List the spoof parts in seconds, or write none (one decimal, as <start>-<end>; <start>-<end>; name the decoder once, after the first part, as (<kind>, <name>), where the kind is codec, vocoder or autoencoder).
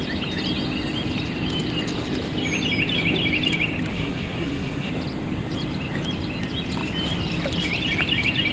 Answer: 3.9-4.9 (codec, SNAC)